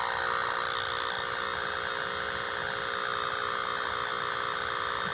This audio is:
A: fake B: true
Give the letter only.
B